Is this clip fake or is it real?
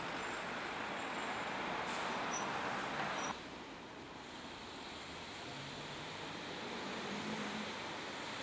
real